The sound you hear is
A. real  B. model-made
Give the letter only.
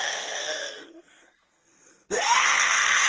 B